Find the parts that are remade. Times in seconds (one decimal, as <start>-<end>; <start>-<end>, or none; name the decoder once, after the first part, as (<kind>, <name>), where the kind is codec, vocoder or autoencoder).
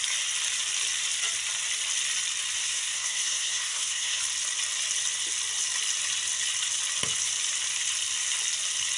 2.6-4.2 (codec, SNAC)